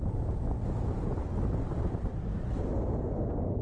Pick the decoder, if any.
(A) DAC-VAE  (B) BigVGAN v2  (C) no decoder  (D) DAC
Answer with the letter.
B